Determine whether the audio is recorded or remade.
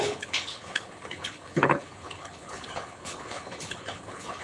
remade